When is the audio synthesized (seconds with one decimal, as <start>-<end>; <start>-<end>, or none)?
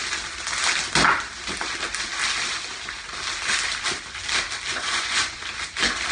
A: 4.7-5.4